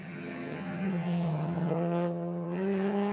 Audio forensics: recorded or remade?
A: remade